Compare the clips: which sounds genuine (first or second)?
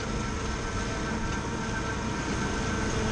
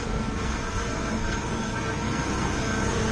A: first